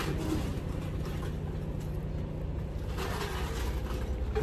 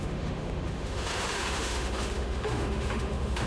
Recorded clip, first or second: first